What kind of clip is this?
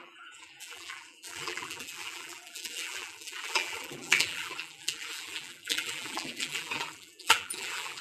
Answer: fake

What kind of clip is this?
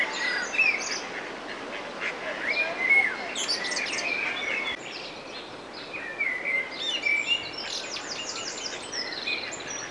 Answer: real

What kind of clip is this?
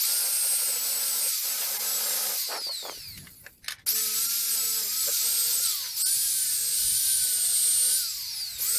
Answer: real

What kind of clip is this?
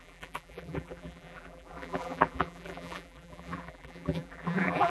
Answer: fake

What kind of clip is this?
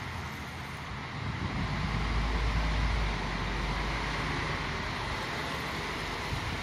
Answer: real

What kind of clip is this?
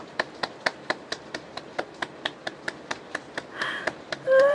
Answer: fake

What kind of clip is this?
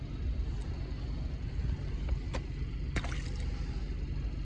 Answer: real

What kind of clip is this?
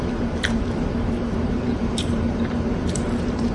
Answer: fake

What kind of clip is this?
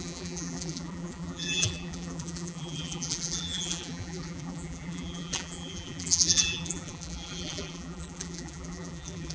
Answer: fake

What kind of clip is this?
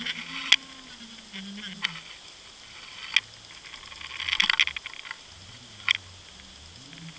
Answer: real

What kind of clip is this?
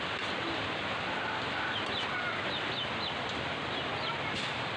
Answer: real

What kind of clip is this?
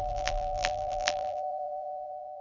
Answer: fake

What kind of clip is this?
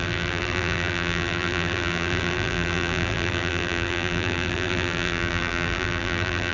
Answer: fake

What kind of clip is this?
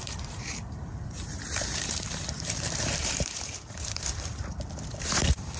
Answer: fake